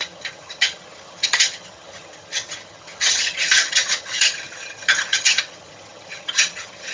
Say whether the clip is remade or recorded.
remade